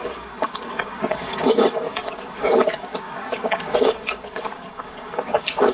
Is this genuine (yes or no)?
no